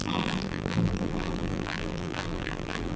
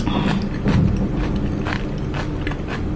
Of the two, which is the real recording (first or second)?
second